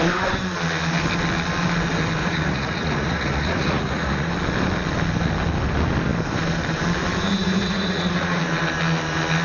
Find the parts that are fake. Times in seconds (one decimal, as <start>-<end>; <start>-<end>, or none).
2.2-4.3; 7.4-8.4